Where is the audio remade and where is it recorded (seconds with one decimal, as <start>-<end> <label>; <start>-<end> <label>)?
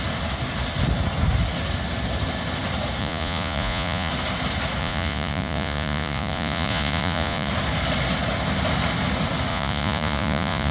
0.0-3.0 recorded; 3.0-4.1 remade; 4.1-4.8 recorded; 4.8-7.5 remade; 7.5-9.5 recorded; 9.5-10.7 remade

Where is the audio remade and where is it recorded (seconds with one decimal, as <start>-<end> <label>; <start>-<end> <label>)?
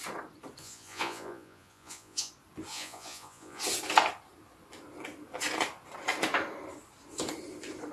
0.0-0.6 recorded; 0.6-2.3 remade; 2.3-2.7 recorded; 2.7-3.6 remade; 3.6-7.9 recorded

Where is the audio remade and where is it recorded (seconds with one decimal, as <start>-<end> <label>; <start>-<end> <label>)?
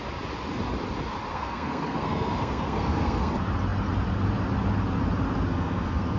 0.0-1.3 recorded; 1.3-3.3 remade; 3.3-5.5 recorded; 5.5-6.2 remade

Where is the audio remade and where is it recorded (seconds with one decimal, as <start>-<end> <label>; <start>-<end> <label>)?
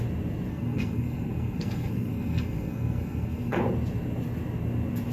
0.0-0.5 recorded; 0.5-3.6 remade; 3.6-5.1 recorded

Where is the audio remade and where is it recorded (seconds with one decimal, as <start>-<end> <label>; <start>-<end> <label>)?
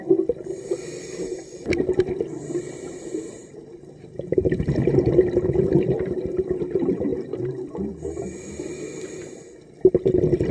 0.0-3.4 recorded; 3.4-6.6 remade; 6.6-7.1 recorded; 7.1-7.7 remade; 7.7-10.5 recorded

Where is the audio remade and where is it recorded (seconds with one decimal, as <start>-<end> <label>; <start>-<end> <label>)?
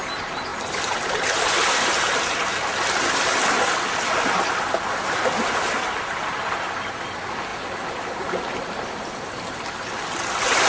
0.0-10.7 recorded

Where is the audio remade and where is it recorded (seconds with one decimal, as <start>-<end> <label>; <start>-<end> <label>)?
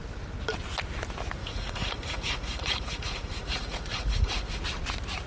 0.0-1.4 recorded; 1.4-4.6 remade; 4.6-5.3 recorded